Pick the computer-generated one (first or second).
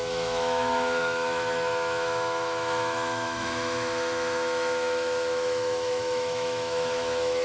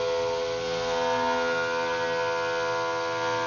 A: first